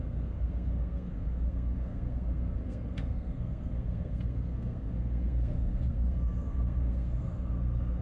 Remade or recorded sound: remade